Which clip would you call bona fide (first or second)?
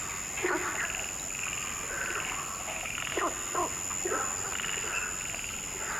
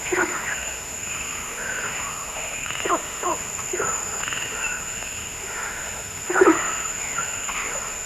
first